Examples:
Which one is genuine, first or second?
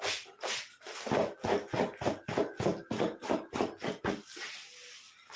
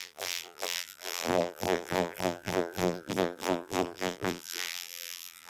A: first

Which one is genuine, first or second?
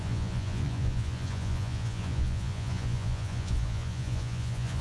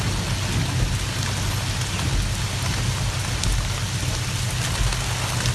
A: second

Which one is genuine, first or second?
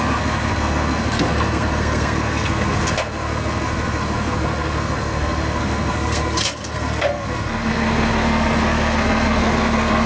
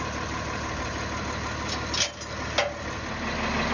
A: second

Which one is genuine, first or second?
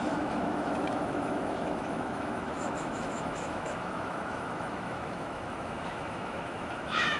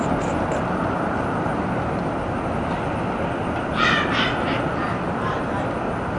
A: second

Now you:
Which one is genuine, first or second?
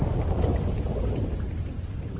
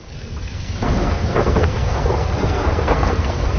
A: first